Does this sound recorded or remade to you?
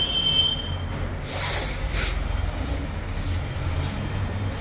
recorded